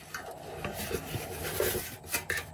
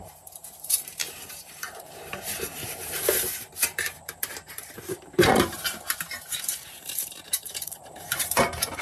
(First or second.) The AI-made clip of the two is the second